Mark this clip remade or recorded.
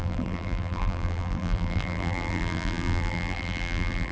remade